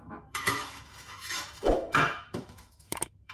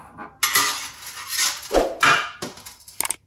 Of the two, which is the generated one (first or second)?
first